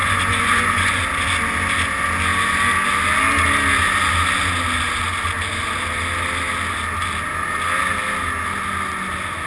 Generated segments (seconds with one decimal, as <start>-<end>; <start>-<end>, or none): 0.0-1.0